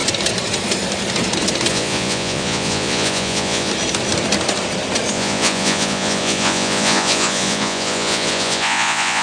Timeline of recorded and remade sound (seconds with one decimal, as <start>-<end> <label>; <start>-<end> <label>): 0.0-1.7 recorded; 1.7-3.7 remade; 3.7-5.1 recorded; 5.1-9.2 remade